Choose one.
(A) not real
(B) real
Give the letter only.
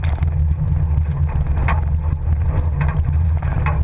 B